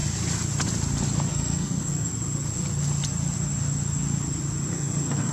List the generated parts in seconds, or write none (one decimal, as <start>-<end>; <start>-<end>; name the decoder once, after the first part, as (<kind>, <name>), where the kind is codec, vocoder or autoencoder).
1.3-2.1 (codec, SNAC); 4.7-5.3